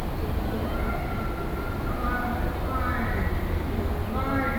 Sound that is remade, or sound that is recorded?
recorded